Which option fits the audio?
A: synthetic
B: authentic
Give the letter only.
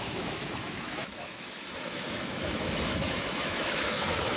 A